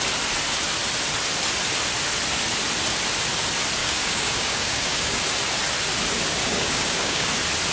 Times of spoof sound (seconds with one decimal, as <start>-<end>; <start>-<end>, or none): 3.8-5.2; 6.4-7.3